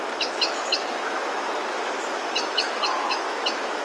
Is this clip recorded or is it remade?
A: remade